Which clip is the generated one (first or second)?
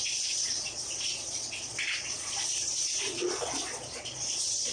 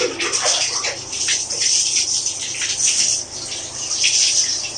first